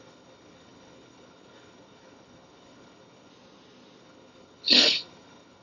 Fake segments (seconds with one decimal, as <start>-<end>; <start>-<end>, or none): 0.0-3.3; 4.0-5.6